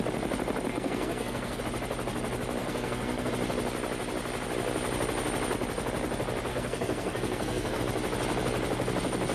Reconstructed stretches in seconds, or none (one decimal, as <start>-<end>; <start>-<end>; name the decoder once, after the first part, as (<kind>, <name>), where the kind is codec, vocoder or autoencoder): 0.7-1.6 (codec, SNAC); 2.6-3.3; 6.5-7.8